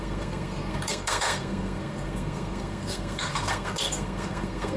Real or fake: fake